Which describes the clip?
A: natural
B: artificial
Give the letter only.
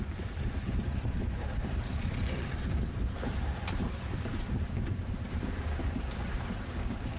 B